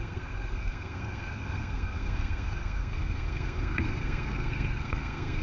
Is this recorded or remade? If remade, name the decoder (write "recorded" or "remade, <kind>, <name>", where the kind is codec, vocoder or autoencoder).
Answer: remade, codec, SNAC